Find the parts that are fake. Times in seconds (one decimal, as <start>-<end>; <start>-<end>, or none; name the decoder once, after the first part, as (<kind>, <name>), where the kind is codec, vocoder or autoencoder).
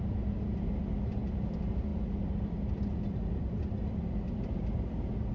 none